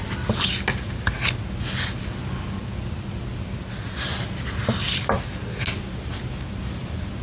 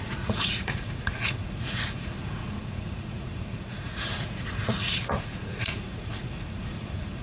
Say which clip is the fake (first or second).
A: second